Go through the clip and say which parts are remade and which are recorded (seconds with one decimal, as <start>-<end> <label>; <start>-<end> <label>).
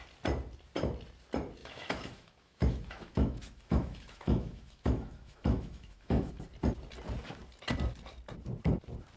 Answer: 0.0-1.6 recorded; 1.6-6.3 remade; 6.3-9.2 recorded